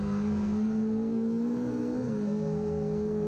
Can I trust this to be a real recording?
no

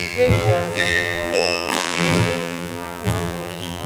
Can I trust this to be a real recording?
no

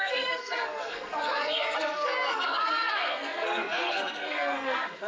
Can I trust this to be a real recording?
no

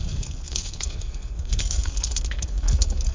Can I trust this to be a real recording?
no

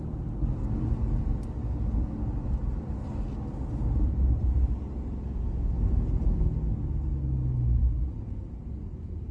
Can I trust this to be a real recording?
yes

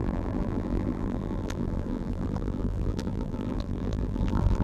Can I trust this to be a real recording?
no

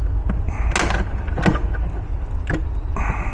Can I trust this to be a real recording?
yes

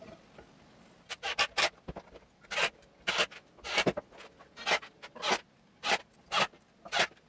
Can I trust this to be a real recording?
yes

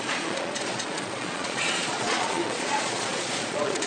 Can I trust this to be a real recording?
no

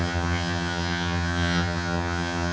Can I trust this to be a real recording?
no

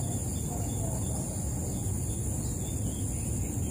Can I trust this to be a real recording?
yes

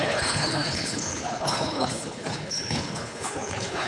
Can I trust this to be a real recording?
no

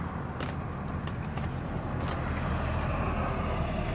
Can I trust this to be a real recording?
yes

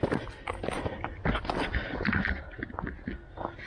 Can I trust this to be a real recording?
yes